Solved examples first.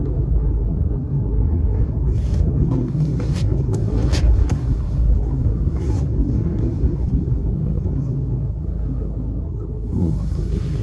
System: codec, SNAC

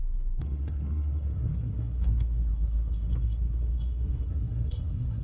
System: codec, SNAC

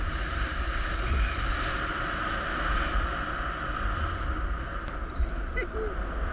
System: none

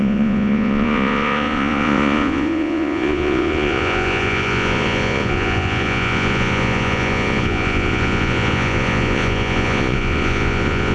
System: vocoder, Vocos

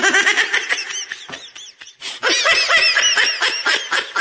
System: none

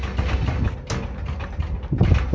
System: none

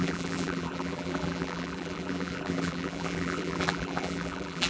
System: vocoder, BigVGAN v2